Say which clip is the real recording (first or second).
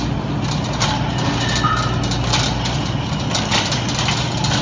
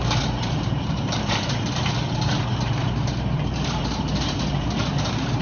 first